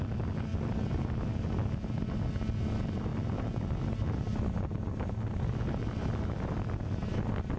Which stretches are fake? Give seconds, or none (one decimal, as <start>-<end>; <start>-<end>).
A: none